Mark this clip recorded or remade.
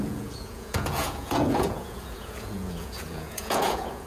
remade